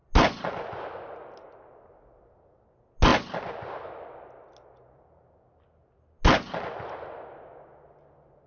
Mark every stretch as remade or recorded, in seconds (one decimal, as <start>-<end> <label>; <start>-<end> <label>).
0.0-8.5 recorded